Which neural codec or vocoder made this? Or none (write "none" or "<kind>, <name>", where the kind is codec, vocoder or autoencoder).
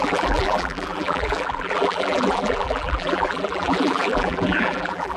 vocoder, BigVGAN v2